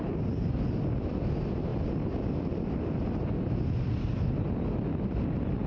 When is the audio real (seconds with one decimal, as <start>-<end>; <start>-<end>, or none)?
0.0-5.7

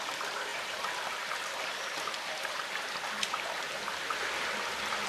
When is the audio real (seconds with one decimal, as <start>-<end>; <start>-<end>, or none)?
none

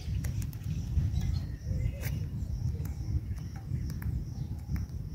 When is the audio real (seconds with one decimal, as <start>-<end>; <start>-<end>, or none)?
2.6-3.3